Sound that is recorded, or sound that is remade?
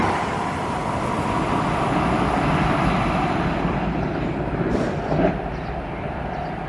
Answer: recorded